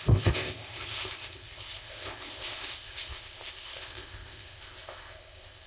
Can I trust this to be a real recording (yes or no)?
no